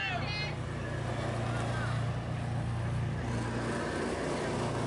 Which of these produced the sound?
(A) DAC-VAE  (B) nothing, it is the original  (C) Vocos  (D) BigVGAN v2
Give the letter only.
B